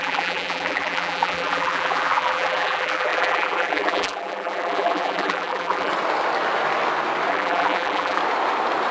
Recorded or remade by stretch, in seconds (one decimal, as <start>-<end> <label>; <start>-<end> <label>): 0.0-5.9 remade; 5.9-7.3 recorded; 7.3-8.2 remade; 8.2-8.9 recorded